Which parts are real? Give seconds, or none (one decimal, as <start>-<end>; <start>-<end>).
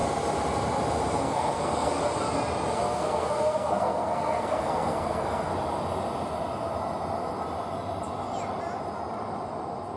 0.0-1.2; 2.0-2.7; 5.5-10.0